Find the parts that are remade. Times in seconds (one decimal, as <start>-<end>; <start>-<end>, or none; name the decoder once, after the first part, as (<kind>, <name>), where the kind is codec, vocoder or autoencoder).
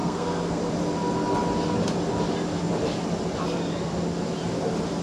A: 0.0-0.6 (codec, SNAC)